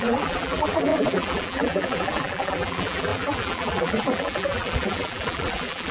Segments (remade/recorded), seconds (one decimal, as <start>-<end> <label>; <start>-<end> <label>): 0.0-5.9 remade